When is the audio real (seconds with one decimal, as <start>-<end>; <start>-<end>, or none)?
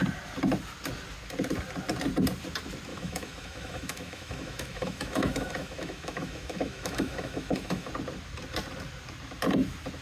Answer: 0.0-2.9; 7.9-10.0